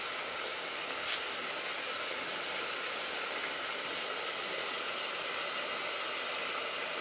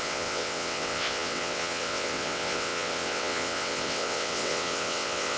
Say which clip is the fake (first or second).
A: second